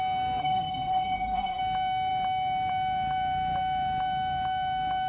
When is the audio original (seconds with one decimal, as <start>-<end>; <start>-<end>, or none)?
0.0-0.4; 1.6-5.1